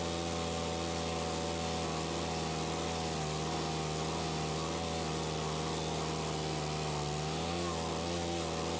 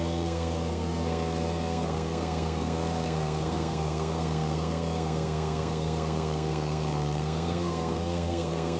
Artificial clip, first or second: second